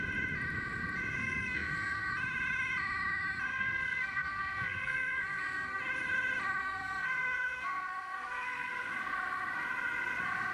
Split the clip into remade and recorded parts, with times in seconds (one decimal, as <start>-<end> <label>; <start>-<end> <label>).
0.0-1.2 recorded; 1.2-2.1 remade; 2.1-3.5 recorded; 3.5-5.8 remade; 5.8-6.6 recorded; 6.6-8.7 remade; 8.7-10.5 recorded